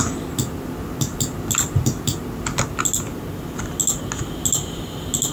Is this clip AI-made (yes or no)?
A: no